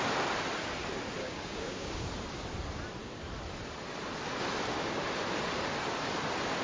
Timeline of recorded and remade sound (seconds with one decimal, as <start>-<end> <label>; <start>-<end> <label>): 0.0-1.2 recorded; 1.2-2.1 remade; 2.1-6.6 recorded